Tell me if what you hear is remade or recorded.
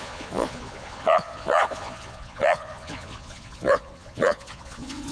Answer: remade